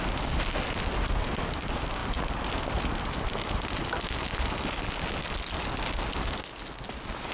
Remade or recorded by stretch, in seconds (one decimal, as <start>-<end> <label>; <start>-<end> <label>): 0.0-7.3 recorded